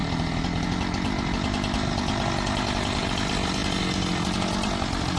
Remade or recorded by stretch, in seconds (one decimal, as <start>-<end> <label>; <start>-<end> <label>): 0.0-5.2 recorded